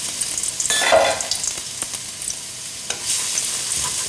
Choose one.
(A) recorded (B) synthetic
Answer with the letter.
A